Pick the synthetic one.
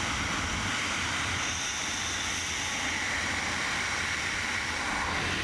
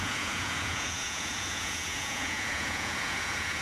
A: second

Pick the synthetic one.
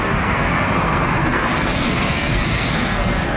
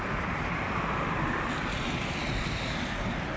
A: first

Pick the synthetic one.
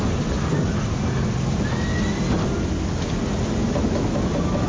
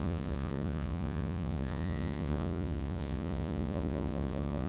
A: second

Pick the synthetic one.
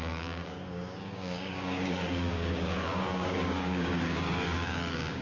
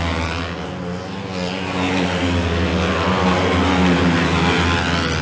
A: first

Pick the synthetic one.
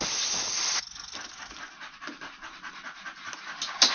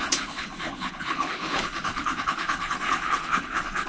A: second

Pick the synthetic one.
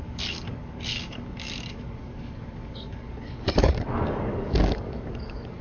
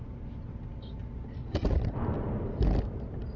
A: first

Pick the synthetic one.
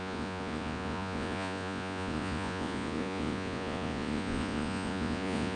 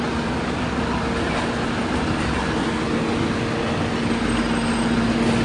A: first